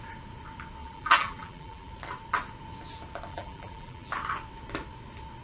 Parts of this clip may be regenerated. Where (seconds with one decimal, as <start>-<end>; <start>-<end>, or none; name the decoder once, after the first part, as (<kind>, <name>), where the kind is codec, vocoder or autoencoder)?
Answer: 0.8-1.9 (vocoder, BigVGAN v2); 3.3-4.1